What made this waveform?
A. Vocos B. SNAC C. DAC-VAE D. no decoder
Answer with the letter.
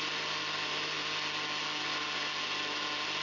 D